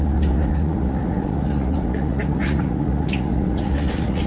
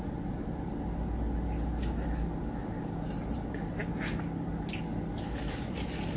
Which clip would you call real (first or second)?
second